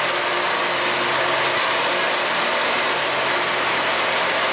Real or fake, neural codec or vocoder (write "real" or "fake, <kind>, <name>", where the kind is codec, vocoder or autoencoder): real